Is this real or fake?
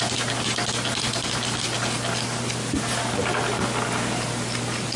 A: real